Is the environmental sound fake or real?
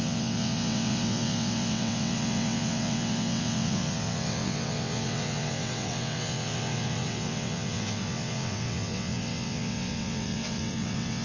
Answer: fake